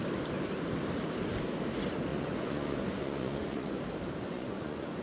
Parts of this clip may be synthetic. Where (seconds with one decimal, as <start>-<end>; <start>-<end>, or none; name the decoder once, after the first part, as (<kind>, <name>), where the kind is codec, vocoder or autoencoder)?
2.1-3.8 (vocoder, Vocos); 4.3-5.0